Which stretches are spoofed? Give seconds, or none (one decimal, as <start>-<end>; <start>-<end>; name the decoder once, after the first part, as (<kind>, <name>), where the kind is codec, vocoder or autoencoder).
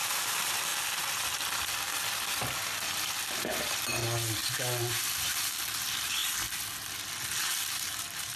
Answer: 0.0-0.7 (vocoder, BigVGAN v2); 2.7-4.0; 4.9-6.2; 7.4-8.4